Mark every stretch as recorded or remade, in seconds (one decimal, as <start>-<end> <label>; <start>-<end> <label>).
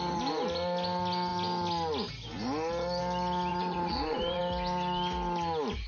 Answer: 0.0-3.5 recorded; 3.5-4.4 remade; 4.4-5.9 recorded